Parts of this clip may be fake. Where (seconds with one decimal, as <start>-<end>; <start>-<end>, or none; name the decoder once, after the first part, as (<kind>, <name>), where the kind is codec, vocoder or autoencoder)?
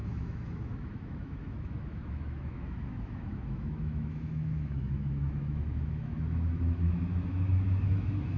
0.0-8.4 (autoencoder, DAC-VAE)